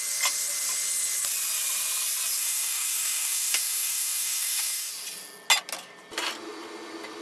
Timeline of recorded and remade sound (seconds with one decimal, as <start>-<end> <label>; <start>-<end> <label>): 0.0-2.4 recorded; 2.4-4.9 remade; 4.9-7.2 recorded